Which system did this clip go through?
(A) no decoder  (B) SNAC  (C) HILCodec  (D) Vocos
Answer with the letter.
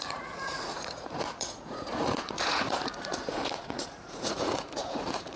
D